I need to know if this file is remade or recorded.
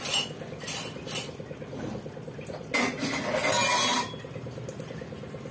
recorded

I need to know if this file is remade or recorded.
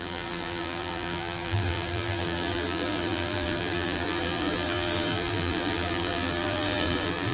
remade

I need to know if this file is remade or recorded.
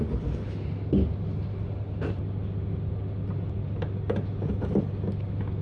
recorded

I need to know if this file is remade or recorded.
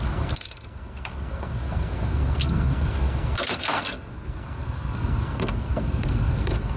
remade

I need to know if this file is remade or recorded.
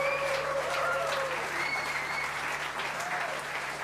remade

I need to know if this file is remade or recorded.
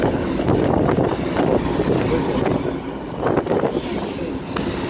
recorded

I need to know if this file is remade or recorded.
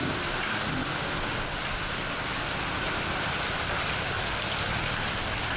recorded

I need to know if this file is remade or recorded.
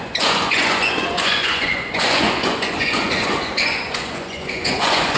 remade